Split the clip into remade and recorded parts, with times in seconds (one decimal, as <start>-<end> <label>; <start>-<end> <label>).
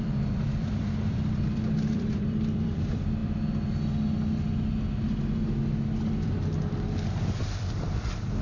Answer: 0.0-3.2 remade; 3.2-8.4 recorded